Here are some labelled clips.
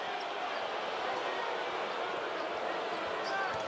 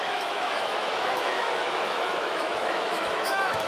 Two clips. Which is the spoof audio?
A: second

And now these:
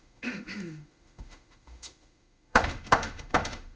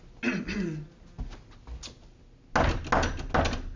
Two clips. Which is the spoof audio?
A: first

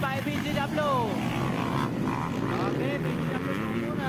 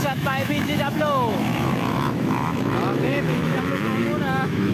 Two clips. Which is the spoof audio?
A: second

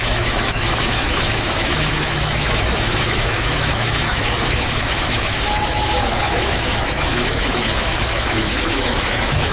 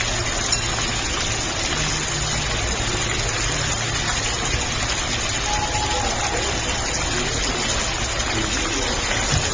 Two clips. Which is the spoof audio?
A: first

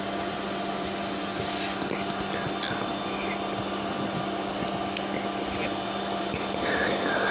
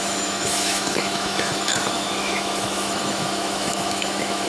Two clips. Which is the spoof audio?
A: second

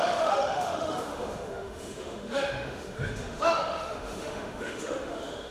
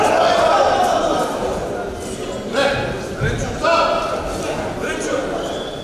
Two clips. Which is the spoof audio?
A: first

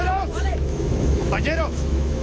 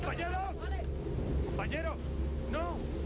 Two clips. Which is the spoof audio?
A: first